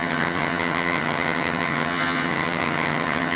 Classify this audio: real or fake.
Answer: fake